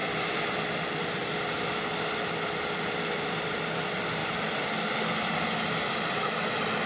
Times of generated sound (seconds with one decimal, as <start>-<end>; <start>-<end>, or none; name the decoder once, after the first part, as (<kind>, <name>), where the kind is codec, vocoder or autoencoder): 0.0-1.8 (vocoder, BigVGAN v2)